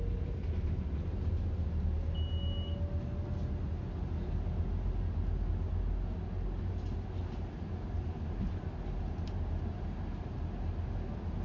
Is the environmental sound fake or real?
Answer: real